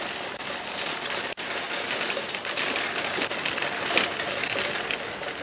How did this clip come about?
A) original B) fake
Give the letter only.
A